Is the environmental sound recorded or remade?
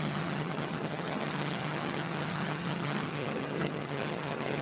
remade